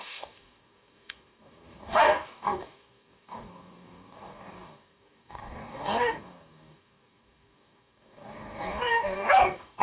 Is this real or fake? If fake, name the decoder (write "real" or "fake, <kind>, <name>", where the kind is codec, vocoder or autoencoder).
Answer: fake, codec, DAC